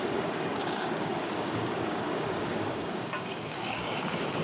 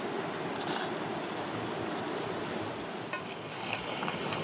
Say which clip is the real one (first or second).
second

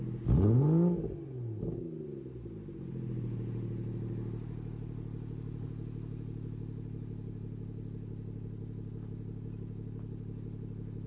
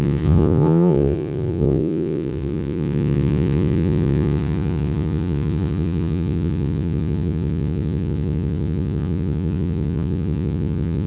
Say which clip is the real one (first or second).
first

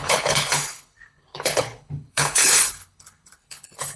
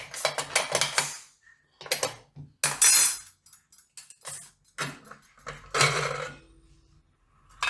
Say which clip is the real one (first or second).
second